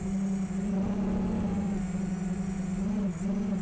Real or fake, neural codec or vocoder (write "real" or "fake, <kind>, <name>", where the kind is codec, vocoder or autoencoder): real